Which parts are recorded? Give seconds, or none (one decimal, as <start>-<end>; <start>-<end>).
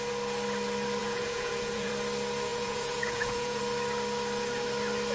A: 0.0-1.0; 1.9-2.5; 3.6-5.1